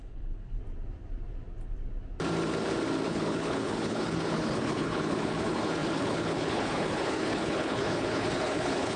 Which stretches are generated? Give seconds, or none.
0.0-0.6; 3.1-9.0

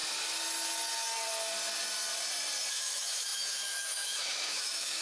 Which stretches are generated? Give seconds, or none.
2.7-5.0

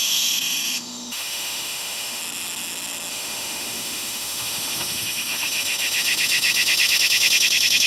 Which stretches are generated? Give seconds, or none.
0.0-2.2; 3.1-7.9